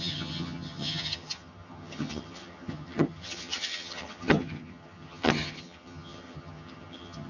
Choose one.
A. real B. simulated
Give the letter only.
B